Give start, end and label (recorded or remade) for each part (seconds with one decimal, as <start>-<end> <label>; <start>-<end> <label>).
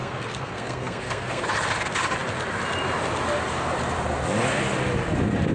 0.0-1.4 remade; 1.4-5.5 recorded